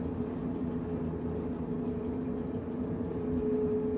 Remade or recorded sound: recorded